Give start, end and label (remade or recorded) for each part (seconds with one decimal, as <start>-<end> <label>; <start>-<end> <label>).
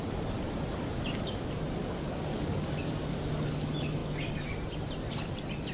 0.0-1.8 recorded; 1.8-3.2 remade; 3.2-5.7 recorded